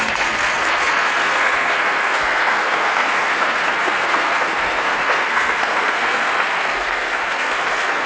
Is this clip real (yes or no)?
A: no